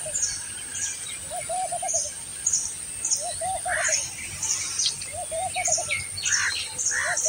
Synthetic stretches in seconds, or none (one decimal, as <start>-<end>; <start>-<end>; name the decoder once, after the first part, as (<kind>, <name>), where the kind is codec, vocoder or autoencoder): none